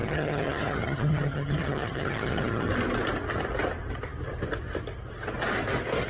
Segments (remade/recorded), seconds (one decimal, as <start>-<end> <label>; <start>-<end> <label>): 0.0-2.7 remade; 2.7-6.1 recorded